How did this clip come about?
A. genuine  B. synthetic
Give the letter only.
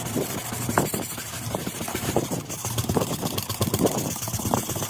B